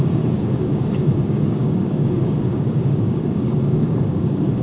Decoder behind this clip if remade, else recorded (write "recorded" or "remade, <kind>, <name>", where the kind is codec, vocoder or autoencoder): remade, codec, DAC